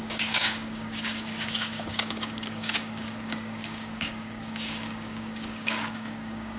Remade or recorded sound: remade